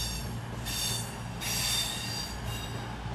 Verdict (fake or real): real